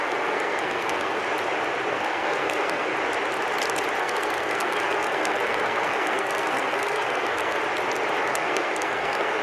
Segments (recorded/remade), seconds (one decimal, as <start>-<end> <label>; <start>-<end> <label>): 0.0-1.2 remade; 1.2-1.9 recorded; 1.9-2.9 remade; 2.9-4.0 recorded; 4.0-7.6 remade; 7.6-8.2 recorded; 8.2-9.4 remade